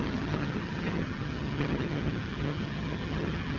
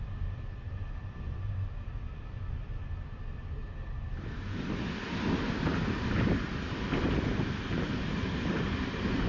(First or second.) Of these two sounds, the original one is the second